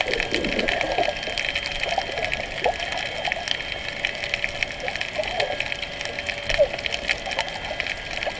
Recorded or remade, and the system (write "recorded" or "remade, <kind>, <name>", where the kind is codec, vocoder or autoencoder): recorded